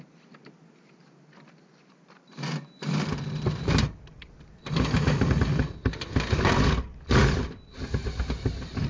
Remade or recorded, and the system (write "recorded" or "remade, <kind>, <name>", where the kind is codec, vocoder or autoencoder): recorded